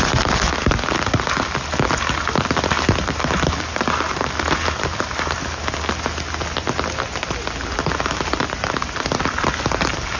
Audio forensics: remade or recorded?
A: recorded